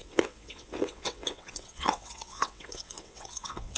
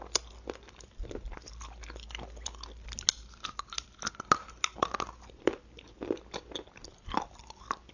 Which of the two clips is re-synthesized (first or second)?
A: first